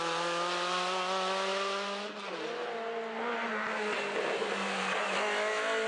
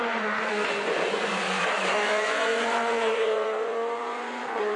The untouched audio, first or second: first